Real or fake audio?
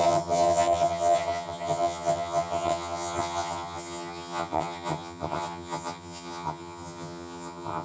fake